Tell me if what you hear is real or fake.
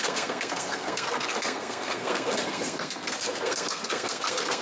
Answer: fake